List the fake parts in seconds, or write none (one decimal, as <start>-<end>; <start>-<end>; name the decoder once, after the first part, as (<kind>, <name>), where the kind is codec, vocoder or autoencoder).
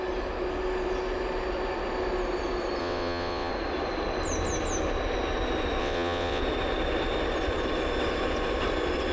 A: 2.8-3.5 (vocoder, WaveNeXt); 5.8-6.4